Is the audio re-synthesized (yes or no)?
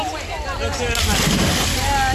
no